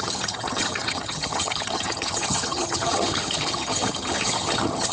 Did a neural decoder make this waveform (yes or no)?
yes